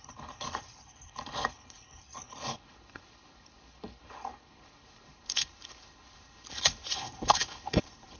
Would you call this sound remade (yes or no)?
yes